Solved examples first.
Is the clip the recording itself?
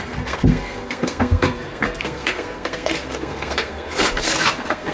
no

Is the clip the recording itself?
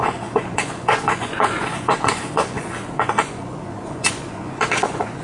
no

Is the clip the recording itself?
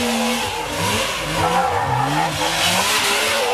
yes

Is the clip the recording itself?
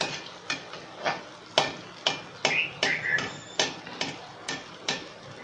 yes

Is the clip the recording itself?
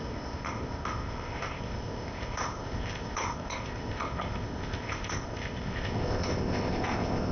no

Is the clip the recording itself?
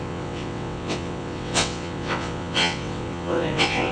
no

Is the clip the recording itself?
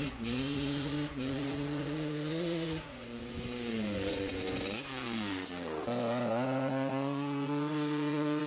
no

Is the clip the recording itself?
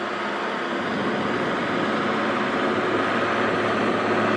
yes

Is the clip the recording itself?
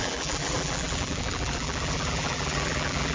no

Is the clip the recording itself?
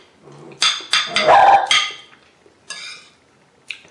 yes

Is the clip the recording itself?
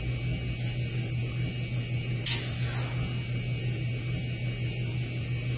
yes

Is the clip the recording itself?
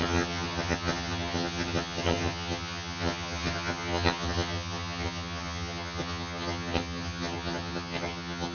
no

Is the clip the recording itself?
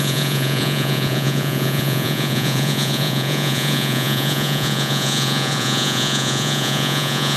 no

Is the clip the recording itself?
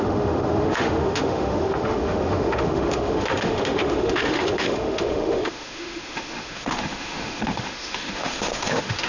no